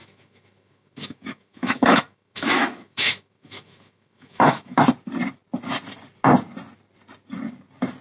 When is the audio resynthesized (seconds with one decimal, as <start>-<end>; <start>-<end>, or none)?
0.0-4.8